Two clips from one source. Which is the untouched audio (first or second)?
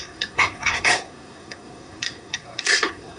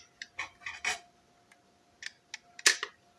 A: second